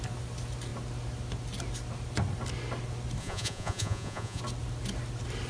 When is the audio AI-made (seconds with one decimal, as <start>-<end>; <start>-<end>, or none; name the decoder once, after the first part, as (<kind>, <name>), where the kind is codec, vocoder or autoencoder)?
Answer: 3.2-4.4 (vocoder, Vocos)